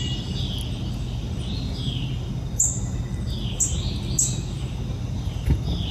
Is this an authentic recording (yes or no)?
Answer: yes